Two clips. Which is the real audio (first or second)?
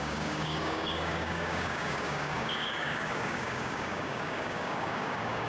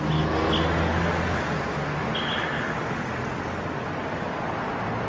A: second